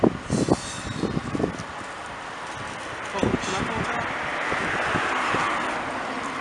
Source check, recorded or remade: recorded